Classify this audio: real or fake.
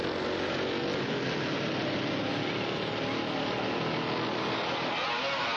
real